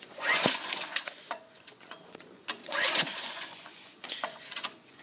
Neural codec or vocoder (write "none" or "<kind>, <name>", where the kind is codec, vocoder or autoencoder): vocoder, Vocos